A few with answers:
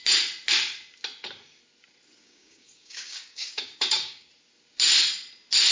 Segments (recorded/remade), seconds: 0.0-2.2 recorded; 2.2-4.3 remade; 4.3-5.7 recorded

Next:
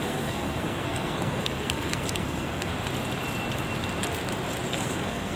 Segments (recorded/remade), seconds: 0.0-2.7 remade; 2.7-4.7 recorded; 4.7-5.4 remade

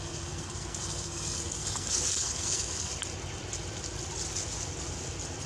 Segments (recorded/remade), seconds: 0.0-2.9 remade; 2.9-5.5 recorded

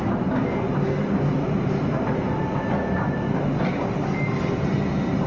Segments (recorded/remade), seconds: 0.0-5.3 recorded